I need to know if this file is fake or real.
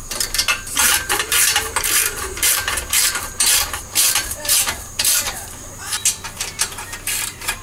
fake